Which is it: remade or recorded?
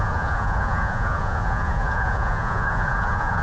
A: remade